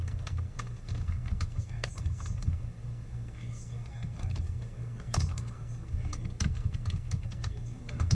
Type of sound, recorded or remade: remade